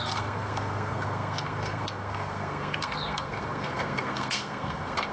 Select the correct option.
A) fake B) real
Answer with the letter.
A